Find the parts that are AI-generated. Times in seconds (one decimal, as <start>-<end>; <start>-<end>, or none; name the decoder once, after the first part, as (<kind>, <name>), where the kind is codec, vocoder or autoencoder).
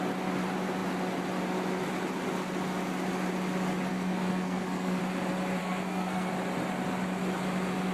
3.9-5.0 (codec, SNAC); 5.6-6.3